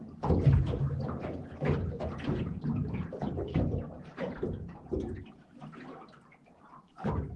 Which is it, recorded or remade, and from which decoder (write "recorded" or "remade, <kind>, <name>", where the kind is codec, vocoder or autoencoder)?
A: remade, vocoder, BigVGAN v2